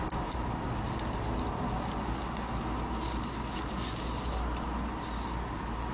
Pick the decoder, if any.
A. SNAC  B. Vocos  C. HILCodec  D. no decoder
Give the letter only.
D